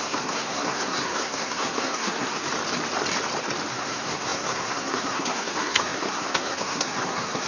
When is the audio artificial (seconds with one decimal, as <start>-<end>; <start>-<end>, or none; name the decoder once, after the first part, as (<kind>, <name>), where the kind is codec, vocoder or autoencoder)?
0.0-2.4 (codec, SNAC); 3.7-7.5